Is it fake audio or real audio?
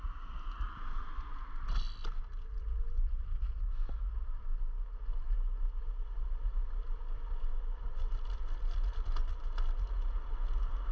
real